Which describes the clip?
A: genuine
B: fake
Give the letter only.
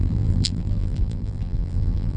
B